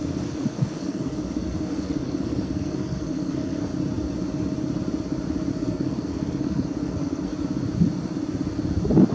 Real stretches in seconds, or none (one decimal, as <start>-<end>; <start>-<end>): 3.7-5.5; 7.3-9.1